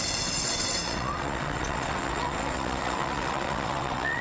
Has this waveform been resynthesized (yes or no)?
yes